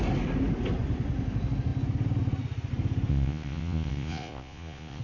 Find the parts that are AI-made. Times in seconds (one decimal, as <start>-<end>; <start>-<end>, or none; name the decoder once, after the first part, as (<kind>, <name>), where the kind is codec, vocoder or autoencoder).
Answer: 3.1-5.0 (vocoder, Vocos)